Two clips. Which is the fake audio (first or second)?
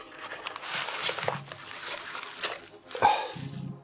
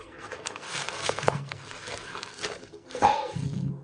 second